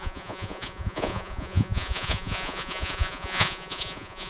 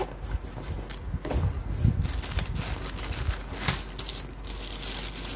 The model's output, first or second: first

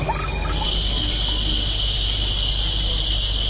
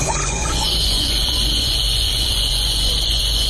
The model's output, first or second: second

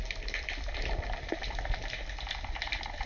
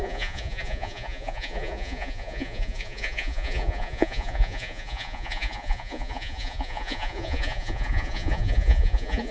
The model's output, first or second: second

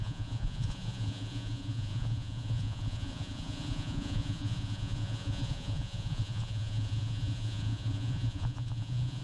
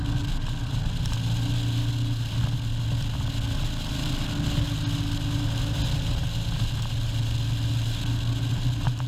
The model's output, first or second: first